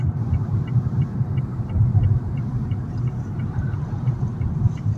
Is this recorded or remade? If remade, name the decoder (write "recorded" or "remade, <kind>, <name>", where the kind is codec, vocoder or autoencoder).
remade, vocoder, BigVGAN v2